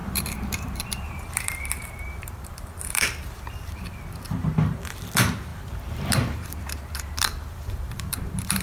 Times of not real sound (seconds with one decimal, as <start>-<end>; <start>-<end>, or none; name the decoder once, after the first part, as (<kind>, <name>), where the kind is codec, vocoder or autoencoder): 0.0-4.0 (vocoder, BigVGAN v2); 5.5-8.6